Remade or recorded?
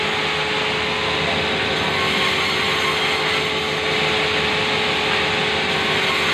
recorded